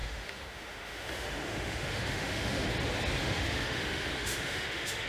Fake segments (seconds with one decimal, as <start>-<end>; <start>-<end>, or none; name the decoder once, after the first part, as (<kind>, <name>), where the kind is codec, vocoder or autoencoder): 0.0-2.7 (autoencoder, DAC-VAE); 3.2-5.1